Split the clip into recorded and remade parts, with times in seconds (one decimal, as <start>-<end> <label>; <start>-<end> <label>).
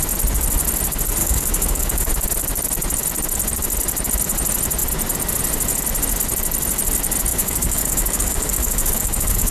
0.0-1.2 recorded; 1.2-2.1 remade; 2.1-7.3 recorded; 7.3-9.5 remade